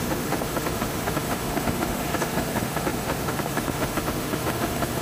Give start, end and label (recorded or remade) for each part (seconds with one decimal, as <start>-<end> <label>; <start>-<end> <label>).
0.0-5.0 remade